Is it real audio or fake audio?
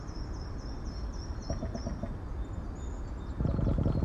real